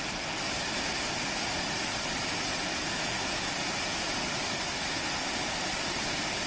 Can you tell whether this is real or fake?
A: real